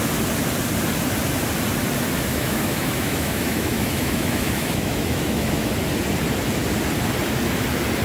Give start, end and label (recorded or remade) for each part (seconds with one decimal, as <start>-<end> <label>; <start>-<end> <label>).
0.0-2.3 recorded; 2.3-5.7 remade; 5.7-8.0 recorded